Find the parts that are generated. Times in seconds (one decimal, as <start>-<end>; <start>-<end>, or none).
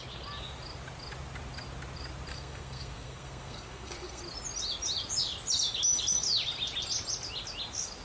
2.3-4.2